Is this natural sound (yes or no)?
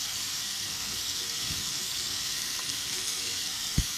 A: no